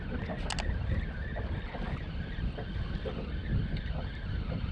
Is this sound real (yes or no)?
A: yes